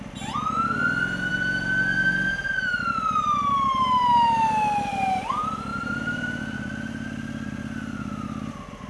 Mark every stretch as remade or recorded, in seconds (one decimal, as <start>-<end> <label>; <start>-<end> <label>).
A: 0.0-5.7 recorded; 5.7-6.4 remade; 6.4-8.9 recorded